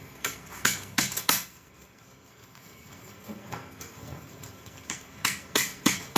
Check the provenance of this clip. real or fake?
fake